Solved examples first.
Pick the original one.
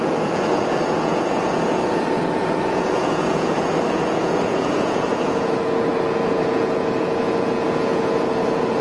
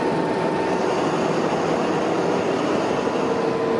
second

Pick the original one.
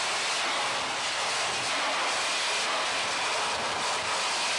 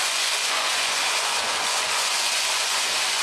first